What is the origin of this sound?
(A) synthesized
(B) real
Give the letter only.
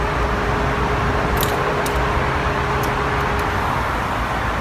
B